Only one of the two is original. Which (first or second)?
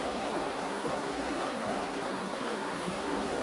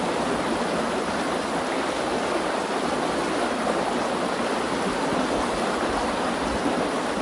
second